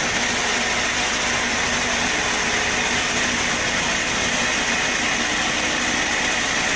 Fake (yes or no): no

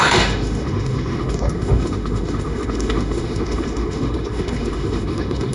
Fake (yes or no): yes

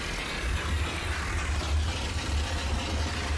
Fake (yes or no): no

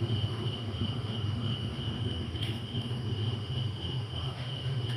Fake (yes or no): yes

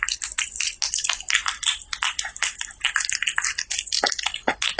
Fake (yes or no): no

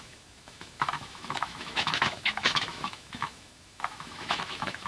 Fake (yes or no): yes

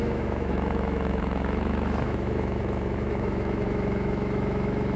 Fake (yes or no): yes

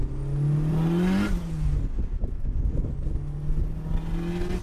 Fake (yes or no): no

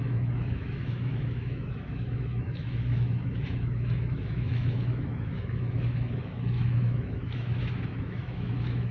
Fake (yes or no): yes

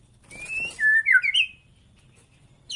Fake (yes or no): no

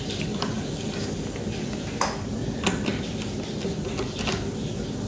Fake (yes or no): no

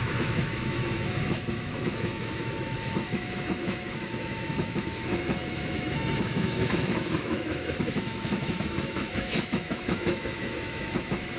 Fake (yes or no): yes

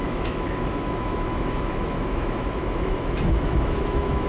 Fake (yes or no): yes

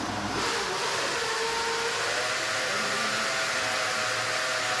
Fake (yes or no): no